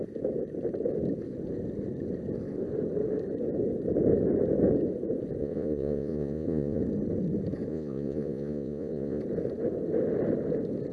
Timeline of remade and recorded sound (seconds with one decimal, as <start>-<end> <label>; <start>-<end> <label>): 0.0-5.4 recorded; 5.4-6.8 remade; 6.8-7.7 recorded; 7.7-9.2 remade; 9.2-10.9 recorded